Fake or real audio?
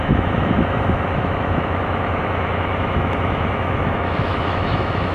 fake